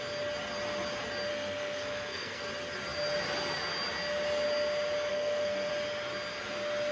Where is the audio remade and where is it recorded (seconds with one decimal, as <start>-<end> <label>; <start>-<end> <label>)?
0.0-1.3 recorded; 1.3-2.4 remade; 2.4-5.1 recorded; 5.1-5.7 remade; 5.7-6.9 recorded